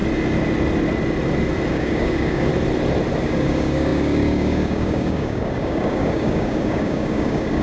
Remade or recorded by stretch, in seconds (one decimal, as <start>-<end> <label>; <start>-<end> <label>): 0.0-1.7 recorded; 1.7-2.5 remade; 2.5-3.2 recorded; 3.2-7.6 remade